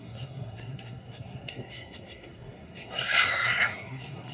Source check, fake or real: fake